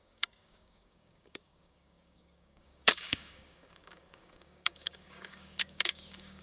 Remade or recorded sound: remade